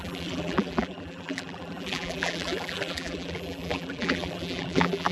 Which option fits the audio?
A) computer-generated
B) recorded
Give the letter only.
A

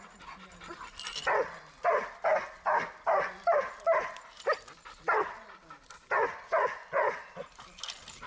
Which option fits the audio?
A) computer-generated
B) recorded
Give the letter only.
B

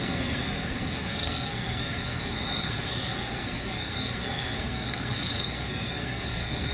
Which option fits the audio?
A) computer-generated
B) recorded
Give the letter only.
A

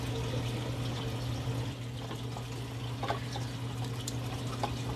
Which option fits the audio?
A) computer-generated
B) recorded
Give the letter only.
B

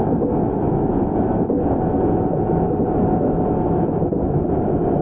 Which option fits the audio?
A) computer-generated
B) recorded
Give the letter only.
B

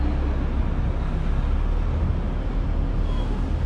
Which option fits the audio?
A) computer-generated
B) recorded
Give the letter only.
B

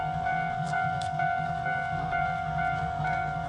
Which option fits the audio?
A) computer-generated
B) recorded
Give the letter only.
A